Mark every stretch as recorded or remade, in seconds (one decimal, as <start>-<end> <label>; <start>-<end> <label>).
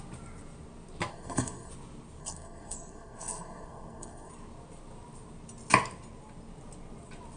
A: 0.0-1.1 recorded; 1.1-1.7 remade; 1.7-2.2 recorded; 2.2-4.3 remade; 4.3-7.4 recorded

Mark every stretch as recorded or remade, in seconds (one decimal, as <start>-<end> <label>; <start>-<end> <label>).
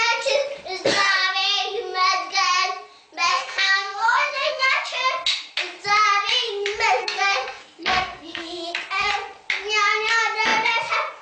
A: 0.0-3.3 recorded; 3.3-4.7 remade; 4.7-7.0 recorded; 7.0-8.6 remade; 8.6-11.2 recorded